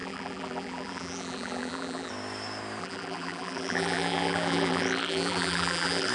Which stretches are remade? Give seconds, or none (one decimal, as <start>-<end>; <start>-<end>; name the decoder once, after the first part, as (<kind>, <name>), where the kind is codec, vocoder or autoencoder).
0.0-2.1 (vocoder, BigVGAN v2); 2.8-6.1